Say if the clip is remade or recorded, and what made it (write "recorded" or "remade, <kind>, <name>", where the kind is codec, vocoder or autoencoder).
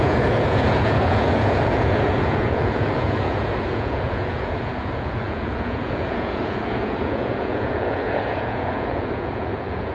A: remade, vocoder, Vocos